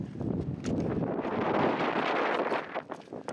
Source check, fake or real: fake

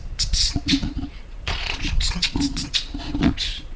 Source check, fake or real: fake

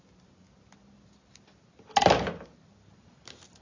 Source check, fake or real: real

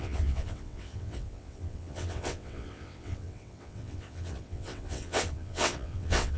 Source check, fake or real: fake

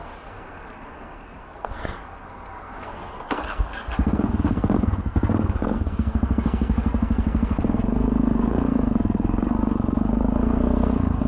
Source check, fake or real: fake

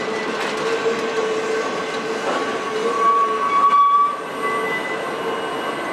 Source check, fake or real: real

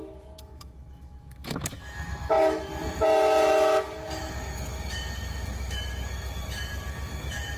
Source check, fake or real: fake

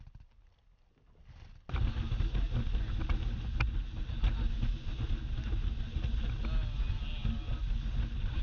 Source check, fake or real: real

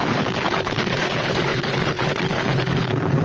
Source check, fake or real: fake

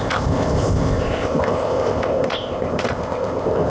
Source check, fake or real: fake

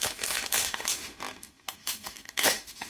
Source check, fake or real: fake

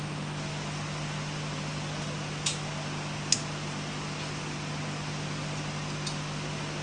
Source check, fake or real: real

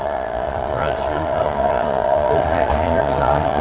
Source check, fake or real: fake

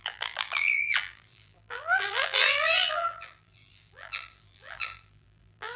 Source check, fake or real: fake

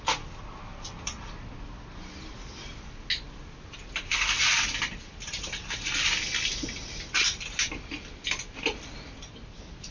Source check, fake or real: real